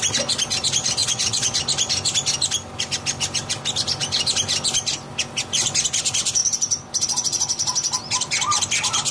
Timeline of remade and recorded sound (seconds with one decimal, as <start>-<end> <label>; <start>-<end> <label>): 0.0-1.0 recorded; 1.0-1.6 remade; 1.6-9.1 recorded